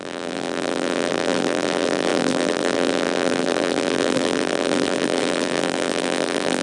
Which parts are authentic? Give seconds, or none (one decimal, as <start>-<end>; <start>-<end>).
none